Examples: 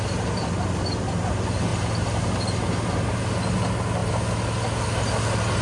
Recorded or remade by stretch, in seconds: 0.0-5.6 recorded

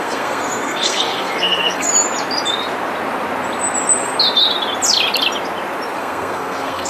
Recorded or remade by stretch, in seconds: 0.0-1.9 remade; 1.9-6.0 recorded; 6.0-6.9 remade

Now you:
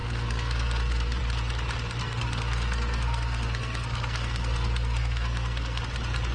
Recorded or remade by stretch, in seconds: 0.0-1.2 remade; 1.2-2.0 recorded; 2.0-5.8 remade; 5.8-6.3 recorded